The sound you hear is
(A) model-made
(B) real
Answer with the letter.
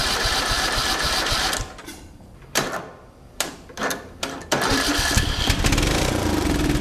A